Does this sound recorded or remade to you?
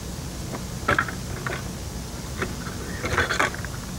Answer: recorded